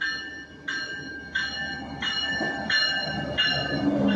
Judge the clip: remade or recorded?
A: recorded